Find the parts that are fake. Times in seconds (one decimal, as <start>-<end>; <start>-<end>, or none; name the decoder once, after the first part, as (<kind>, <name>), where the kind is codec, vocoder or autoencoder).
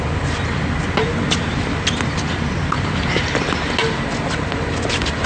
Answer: none